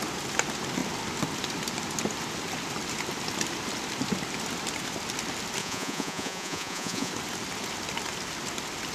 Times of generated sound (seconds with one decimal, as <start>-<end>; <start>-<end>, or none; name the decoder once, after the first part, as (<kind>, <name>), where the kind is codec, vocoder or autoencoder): 5.6-7.1 (vocoder, Vocos)